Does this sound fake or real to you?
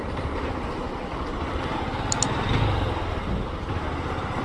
real